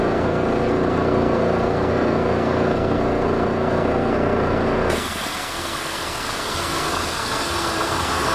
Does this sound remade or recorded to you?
remade